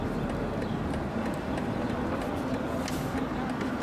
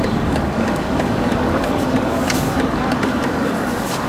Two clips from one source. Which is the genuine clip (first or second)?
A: first